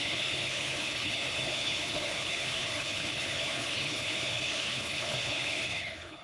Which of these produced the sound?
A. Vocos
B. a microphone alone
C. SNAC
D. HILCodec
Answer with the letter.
D